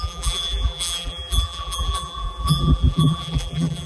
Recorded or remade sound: remade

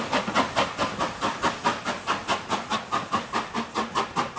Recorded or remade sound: recorded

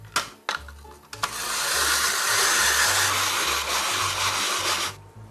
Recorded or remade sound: recorded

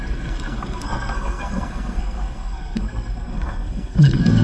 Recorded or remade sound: remade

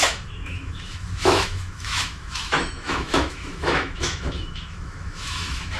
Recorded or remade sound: remade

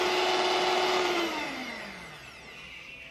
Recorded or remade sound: recorded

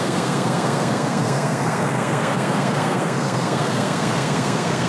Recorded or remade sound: remade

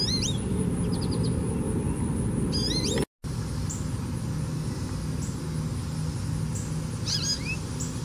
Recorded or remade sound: recorded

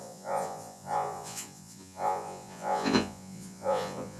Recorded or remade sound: remade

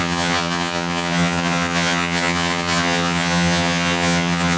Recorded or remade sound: remade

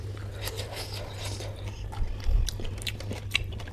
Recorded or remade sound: recorded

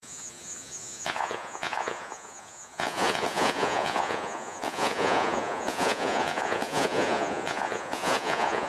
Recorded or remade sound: remade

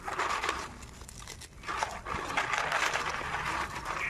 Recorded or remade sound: recorded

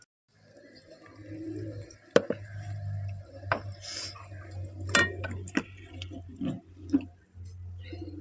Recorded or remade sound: recorded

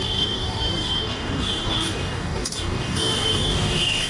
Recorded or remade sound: remade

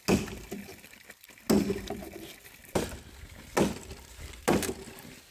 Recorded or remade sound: recorded